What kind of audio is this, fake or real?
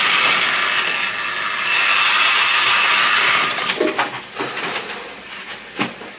real